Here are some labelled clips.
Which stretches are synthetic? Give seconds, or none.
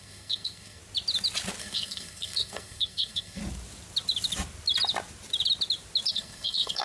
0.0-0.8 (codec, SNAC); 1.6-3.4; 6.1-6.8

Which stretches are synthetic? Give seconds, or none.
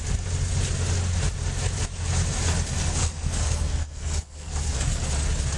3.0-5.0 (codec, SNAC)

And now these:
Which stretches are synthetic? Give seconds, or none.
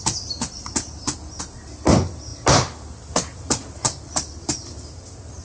none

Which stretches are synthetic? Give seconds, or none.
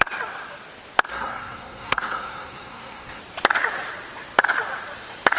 1.1-3.2 (codec, SNAC)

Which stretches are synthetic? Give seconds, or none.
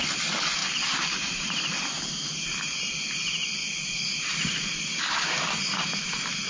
3.6-6.0 (vocoder, BigVGAN v2)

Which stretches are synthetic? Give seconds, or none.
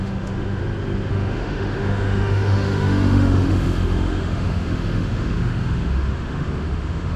0.0-0.6 (autoencoder, DAC-VAE); 1.1-7.2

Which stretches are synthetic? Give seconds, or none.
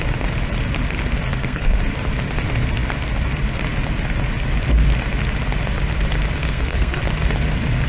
1.3-1.8 (codec, SNAC); 6.4-7.0